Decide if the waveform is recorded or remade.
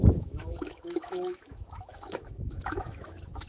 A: remade